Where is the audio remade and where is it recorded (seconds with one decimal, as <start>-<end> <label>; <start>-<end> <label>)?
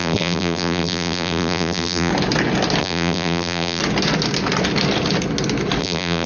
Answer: 0.0-2.1 remade; 2.1-2.8 recorded; 2.8-3.8 remade; 3.8-5.8 recorded; 5.8-6.3 remade